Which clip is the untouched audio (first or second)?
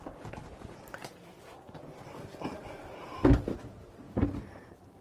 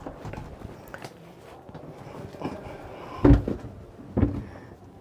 second